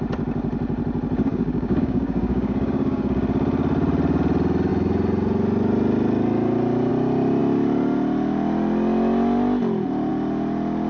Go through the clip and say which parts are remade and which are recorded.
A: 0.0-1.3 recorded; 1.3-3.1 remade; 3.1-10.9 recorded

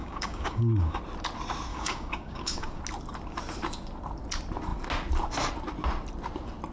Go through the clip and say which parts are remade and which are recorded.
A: 0.0-1.0 remade; 1.0-1.7 recorded; 1.7-2.8 remade; 2.8-6.7 recorded

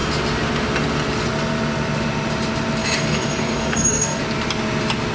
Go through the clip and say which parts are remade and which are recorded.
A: 0.0-2.8 recorded; 2.8-4.2 remade; 4.2-5.1 recorded

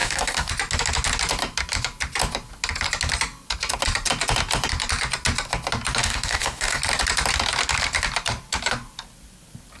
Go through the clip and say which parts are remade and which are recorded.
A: 0.0-0.5 remade; 0.5-6.0 recorded; 6.0-6.8 remade; 6.8-9.8 recorded

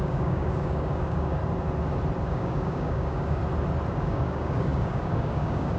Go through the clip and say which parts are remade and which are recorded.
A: 0.0-1.4 remade; 1.4-2.2 recorded; 2.2-3.4 remade; 3.4-3.9 recorded; 3.9-5.8 remade

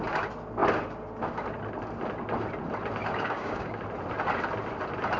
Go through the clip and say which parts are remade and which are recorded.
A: 0.0-3.0 recorded; 3.0-3.8 remade; 3.8-5.2 recorded

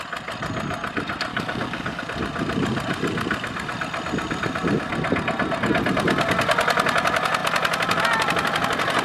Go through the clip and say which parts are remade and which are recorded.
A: 0.0-1.3 recorded; 1.3-2.0 remade; 2.0-9.0 recorded